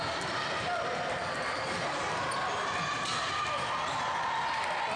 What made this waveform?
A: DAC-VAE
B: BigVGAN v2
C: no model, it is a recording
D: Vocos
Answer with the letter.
C